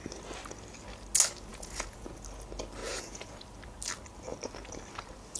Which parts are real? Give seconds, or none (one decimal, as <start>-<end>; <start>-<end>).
0.0-1.5; 2.1-2.8; 3.4-5.4